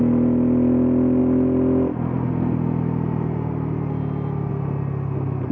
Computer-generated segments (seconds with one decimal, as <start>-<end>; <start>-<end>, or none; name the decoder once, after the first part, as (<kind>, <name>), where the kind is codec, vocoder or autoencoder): none